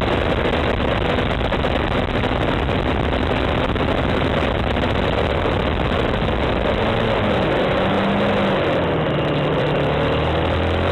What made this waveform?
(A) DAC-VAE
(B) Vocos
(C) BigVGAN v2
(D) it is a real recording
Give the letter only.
D